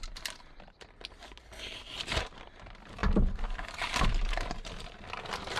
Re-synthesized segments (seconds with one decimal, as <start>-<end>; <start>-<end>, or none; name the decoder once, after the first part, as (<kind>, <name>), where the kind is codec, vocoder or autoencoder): none